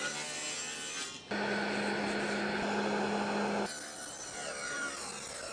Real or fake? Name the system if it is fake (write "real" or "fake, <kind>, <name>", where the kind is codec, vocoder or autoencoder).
real